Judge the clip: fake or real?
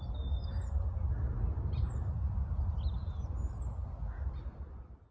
real